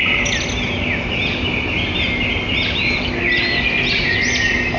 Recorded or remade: recorded